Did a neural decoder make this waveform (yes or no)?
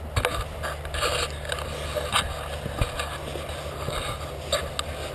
no